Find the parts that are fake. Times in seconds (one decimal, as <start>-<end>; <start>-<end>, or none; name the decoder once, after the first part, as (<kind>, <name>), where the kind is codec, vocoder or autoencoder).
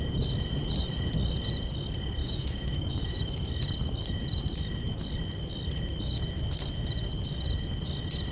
2.2-3.5 (autoencoder, DAC-VAE)